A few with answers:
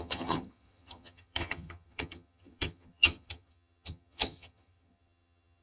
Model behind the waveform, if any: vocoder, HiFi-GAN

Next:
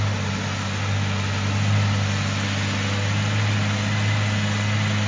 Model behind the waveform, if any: none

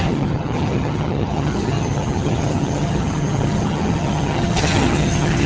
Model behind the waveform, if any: vocoder, HiFi-GAN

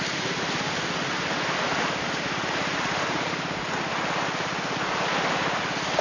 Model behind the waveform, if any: none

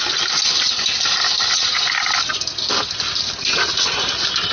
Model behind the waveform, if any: none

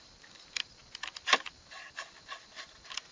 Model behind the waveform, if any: none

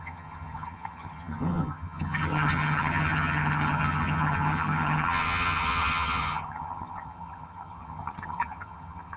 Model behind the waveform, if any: vocoder, HiFi-GAN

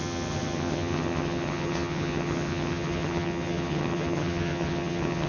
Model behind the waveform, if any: vocoder, HiFi-GAN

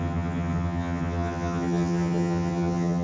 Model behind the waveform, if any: vocoder, HiFi-GAN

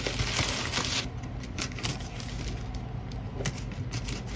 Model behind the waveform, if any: none